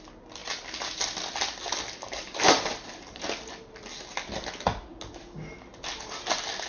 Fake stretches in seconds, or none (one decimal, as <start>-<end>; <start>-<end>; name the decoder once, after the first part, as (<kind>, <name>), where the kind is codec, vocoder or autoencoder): none